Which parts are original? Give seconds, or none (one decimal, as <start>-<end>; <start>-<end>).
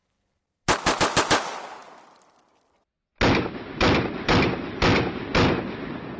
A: 0.0-6.2